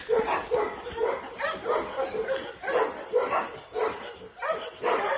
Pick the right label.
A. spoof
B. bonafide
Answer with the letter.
B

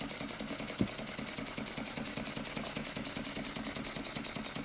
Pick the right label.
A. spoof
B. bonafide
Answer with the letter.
B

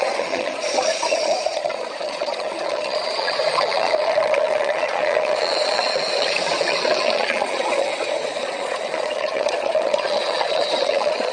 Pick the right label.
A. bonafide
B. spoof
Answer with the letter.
B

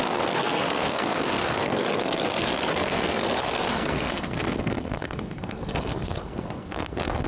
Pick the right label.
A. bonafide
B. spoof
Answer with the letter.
B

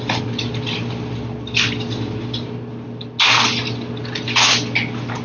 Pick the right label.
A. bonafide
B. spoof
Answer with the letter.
A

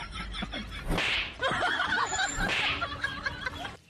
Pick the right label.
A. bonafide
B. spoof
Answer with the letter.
B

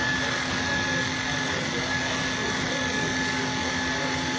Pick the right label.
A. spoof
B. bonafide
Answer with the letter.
B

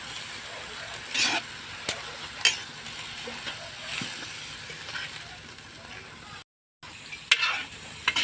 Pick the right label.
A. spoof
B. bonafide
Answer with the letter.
B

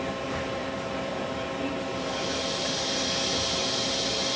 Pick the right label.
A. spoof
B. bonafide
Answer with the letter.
B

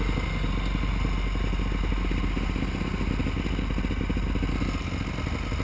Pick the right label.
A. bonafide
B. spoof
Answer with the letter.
A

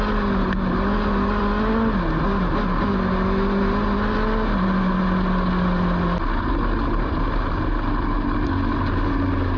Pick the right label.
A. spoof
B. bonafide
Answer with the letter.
B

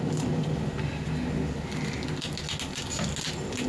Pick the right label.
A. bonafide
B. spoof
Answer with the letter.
A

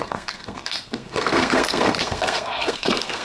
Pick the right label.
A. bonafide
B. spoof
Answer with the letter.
B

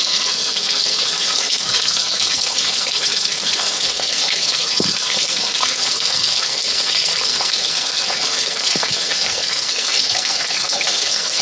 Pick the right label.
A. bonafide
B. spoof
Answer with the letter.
B